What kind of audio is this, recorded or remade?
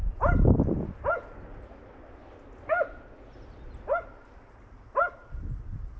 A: recorded